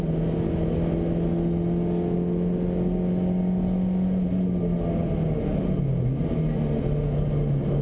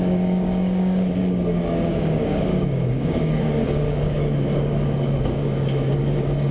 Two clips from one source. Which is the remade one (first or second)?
second